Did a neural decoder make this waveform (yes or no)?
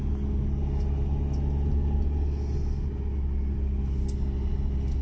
no